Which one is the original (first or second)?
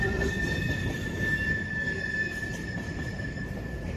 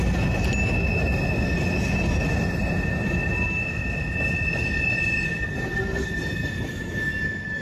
second